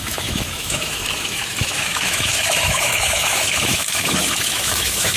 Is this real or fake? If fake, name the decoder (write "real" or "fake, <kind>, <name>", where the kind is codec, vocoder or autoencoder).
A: fake, autoencoder, DAC-VAE